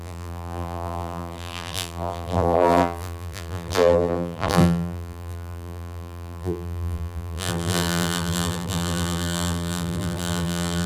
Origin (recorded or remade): remade